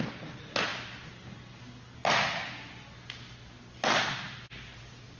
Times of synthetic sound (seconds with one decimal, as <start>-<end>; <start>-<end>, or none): none